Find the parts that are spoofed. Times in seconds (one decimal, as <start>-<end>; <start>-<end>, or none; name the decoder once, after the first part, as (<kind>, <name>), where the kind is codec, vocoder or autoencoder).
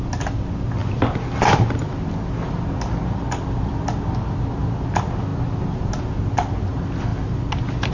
none